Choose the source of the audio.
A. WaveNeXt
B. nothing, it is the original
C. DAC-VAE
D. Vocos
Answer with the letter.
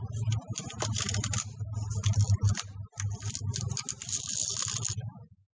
B